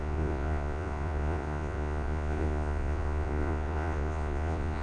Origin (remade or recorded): remade